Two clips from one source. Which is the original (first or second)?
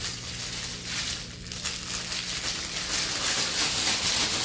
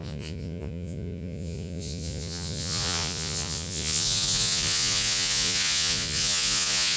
first